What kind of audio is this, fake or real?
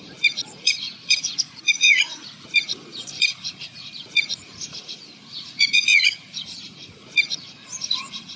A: fake